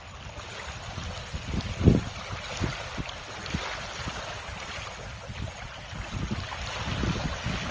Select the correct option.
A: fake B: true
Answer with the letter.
B